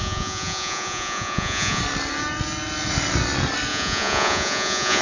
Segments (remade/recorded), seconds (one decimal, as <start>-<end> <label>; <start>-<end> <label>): 0.0-1.8 remade; 1.8-3.7 recorded; 3.7-5.0 remade